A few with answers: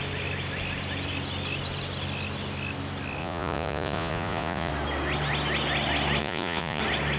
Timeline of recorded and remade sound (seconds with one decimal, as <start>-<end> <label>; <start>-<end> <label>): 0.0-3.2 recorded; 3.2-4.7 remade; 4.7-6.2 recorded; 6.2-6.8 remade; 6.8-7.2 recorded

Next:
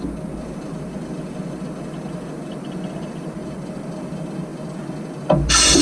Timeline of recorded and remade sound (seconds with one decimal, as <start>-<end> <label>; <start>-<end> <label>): 0.0-5.8 recorded

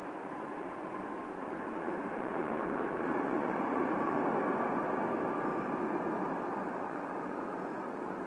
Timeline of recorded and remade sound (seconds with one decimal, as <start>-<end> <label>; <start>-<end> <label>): 0.0-4.2 remade; 4.2-6.5 recorded; 6.5-8.3 remade

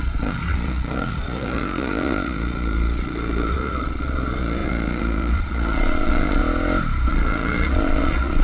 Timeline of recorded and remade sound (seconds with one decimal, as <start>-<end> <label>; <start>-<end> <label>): 0.0-6.4 remade; 6.4-7.1 recorded; 7.1-8.4 remade

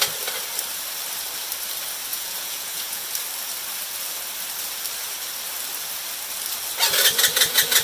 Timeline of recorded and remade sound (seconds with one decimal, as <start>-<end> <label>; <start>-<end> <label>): 0.0-2.1 recorded; 2.1-3.1 remade; 3.1-7.8 recorded

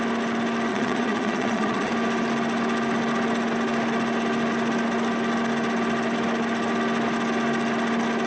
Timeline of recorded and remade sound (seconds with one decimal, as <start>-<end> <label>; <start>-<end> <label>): 0.0-0.7 recorded; 0.7-1.9 remade; 1.9-8.3 recorded

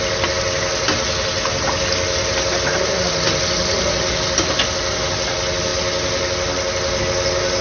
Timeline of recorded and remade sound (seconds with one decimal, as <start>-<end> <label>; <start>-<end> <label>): 0.0-7.6 recorded

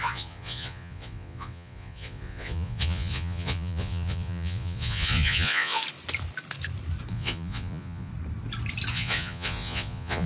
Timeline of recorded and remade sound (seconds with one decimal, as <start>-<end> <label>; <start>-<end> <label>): 0.0-5.8 remade; 5.8-7.1 recorded; 7.1-8.1 remade; 8.1-8.9 recorded; 8.9-10.3 remade